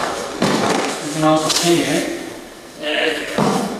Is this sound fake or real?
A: fake